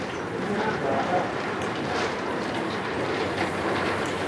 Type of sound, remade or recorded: remade